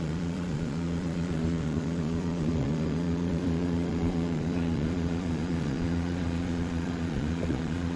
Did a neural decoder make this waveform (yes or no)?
yes